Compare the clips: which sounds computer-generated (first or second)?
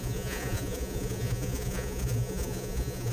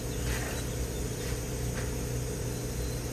first